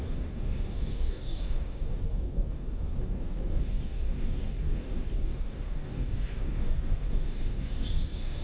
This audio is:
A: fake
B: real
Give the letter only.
A